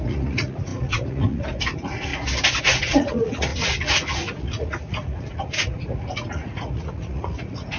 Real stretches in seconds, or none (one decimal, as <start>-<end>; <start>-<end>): 2.1-2.6